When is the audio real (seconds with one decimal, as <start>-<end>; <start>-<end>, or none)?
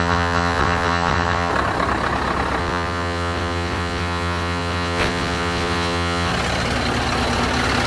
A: 1.5-2.6; 6.3-7.9